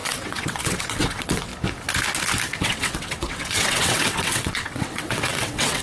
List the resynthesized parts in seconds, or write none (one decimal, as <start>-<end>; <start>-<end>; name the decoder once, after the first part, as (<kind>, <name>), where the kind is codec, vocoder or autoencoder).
0.0-1.5 (vocoder, WaveNeXt); 2.6-5.8